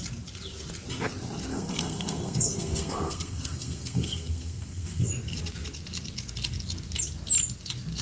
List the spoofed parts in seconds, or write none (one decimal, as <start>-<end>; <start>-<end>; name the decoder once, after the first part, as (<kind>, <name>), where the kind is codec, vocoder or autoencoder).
1.5-5.1 (codec, SNAC)